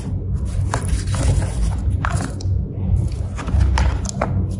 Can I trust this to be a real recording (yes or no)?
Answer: yes